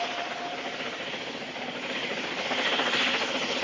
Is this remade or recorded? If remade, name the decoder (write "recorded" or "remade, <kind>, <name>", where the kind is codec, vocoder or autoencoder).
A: recorded